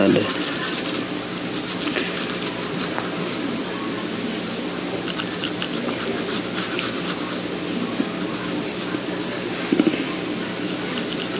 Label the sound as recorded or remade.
recorded